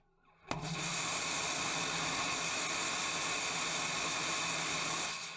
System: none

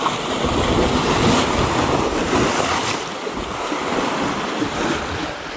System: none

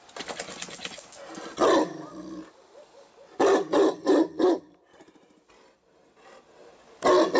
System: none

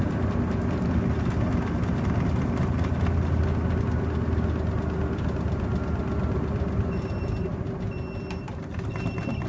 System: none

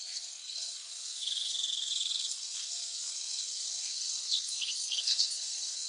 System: codec, SNAC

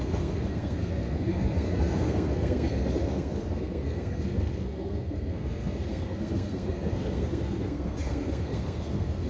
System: codec, SNAC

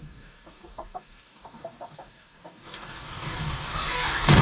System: codec, DAC